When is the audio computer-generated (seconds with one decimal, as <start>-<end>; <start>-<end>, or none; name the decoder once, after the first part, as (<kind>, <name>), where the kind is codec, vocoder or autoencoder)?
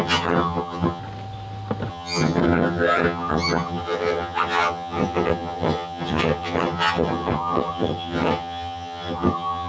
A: 0.0-1.0 (vocoder, HiFi-GAN); 1.9-9.7